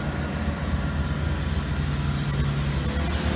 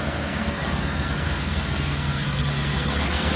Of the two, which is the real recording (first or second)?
first